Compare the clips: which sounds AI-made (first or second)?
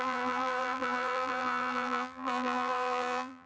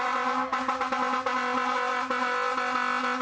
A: first